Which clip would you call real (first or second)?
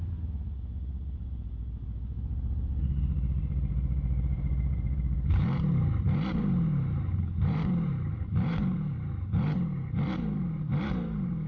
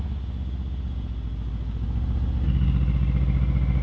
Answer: second